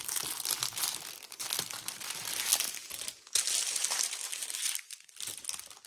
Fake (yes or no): no